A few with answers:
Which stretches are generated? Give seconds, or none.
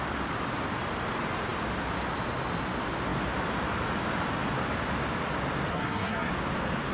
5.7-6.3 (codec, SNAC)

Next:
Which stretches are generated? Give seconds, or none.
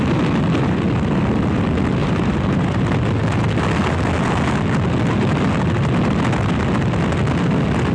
2.0-2.8 (vocoder, BigVGAN v2)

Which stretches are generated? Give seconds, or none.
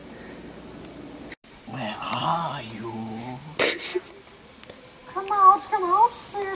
none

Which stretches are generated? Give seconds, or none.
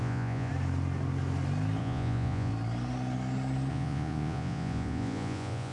0.0-0.5 (vocoder, Vocos); 1.8-2.5; 3.7-5.7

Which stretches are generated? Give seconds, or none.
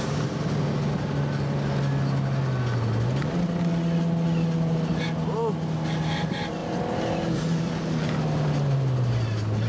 none